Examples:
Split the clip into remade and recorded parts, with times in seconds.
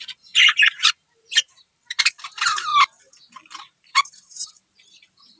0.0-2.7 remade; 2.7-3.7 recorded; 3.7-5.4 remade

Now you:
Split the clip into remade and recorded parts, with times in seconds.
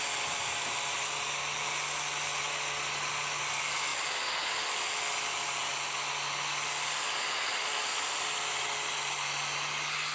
0.0-10.1 recorded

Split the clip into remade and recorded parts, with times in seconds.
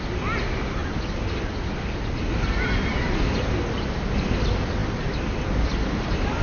0.0-2.2 recorded; 2.2-3.0 remade; 3.0-6.4 recorded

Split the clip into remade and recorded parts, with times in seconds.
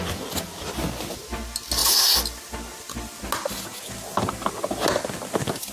0.0-5.7 recorded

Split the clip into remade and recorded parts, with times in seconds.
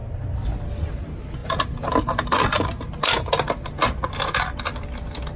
0.0-5.4 recorded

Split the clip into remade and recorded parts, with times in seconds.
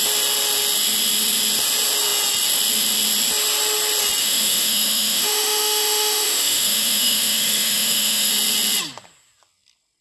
0.0-4.2 recorded; 4.2-8.3 remade; 8.3-10.0 recorded